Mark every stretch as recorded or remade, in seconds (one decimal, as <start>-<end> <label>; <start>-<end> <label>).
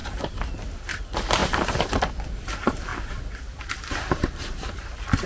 0.0-1.4 remade; 1.4-2.1 recorded; 2.1-5.3 remade